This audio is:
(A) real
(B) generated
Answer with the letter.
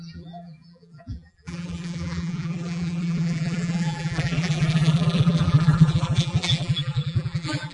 B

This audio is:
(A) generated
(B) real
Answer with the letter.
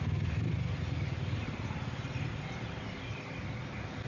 B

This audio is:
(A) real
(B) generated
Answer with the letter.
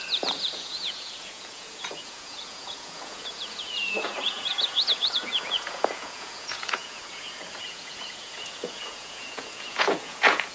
B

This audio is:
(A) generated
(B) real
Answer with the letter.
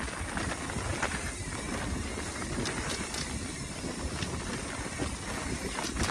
B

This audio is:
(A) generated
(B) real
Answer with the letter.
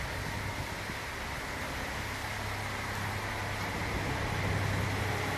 B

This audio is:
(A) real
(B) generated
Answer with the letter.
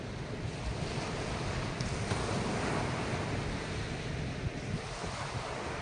A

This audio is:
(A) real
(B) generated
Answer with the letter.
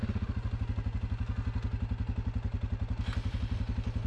A